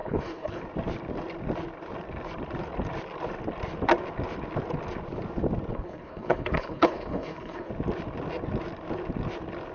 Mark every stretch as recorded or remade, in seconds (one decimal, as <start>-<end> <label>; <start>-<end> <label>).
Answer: 0.0-0.6 remade; 0.6-5.7 recorded; 5.7-7.7 remade; 7.7-9.7 recorded